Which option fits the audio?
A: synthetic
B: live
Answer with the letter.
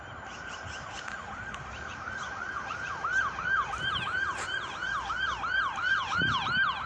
A